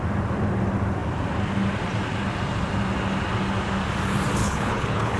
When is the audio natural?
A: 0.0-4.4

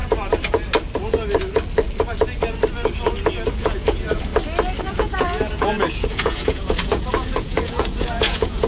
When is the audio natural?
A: 0.0-3.6; 4.3-4.8

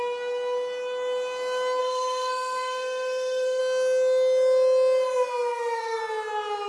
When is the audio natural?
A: 0.0-1.8; 3.6-5.5; 6.0-6.7

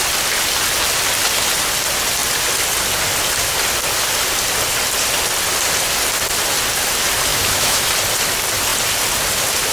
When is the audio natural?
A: 0.0-7.3; 7.9-9.7

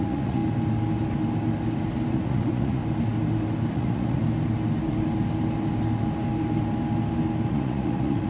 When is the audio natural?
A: 0.4-2.1; 2.8-3.7; 4.2-7.5

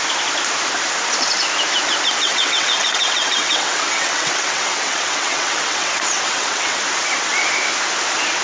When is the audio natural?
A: 0.0-2.2; 6.8-8.4

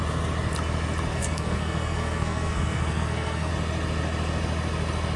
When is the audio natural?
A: 0.0-1.1; 3.5-5.2

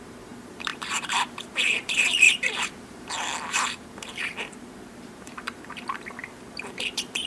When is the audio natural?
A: none